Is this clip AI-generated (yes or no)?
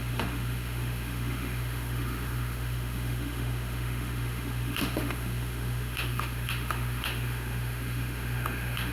yes